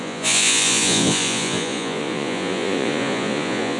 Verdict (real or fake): fake